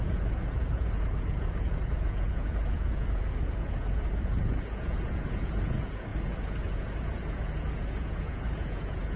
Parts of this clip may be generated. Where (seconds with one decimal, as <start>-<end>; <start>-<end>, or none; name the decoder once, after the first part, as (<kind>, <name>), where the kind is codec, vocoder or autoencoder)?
0.0-9.2 (vocoder, Vocos)